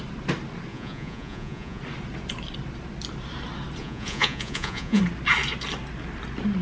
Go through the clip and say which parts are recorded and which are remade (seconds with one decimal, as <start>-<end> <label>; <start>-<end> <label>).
0.0-0.7 recorded; 0.7-1.8 remade; 1.8-3.8 recorded; 3.8-5.0 remade; 5.0-6.6 recorded